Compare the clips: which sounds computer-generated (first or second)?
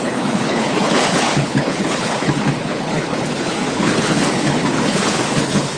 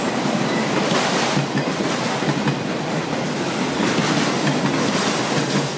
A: first